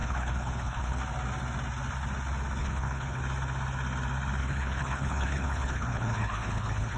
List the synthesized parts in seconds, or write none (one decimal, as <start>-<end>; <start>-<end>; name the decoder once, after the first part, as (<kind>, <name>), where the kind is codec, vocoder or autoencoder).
0.0-1.0 (codec, HILCodec); 2.6-3.2; 4.4-7.0